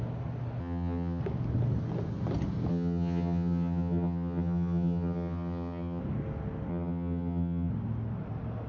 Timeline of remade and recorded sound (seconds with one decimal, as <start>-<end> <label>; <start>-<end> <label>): 0.0-0.6 recorded; 0.6-1.2 remade; 1.2-2.7 recorded; 2.7-6.0 remade; 6.0-6.7 recorded; 6.7-7.7 remade; 7.7-8.7 recorded